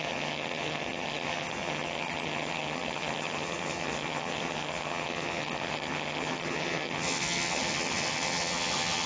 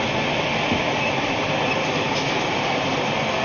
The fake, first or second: first